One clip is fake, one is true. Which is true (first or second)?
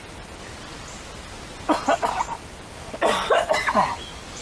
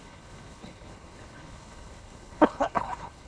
first